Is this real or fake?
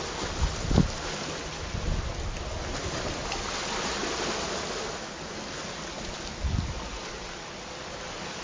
real